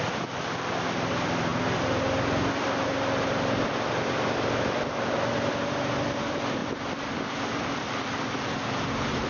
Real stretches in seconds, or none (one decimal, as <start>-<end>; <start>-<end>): 1.5-5.5; 6.6-7.4